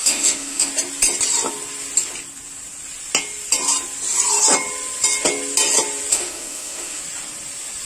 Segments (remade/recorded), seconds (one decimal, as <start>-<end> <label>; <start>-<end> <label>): 0.0-0.7 remade; 0.7-6.1 recorded; 6.1-7.0 remade; 7.0-7.9 recorded